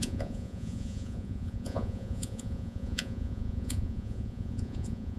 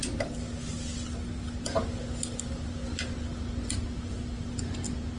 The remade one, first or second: first